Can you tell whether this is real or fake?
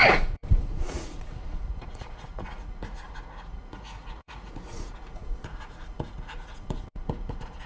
fake